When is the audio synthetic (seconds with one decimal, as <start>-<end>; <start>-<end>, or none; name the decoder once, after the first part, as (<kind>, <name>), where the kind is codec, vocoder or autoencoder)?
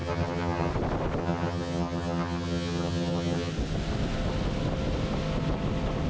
0.0-0.7 (vocoder, HiFi-GAN); 1.2-3.5